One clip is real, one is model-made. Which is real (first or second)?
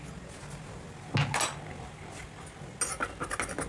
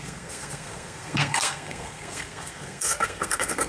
first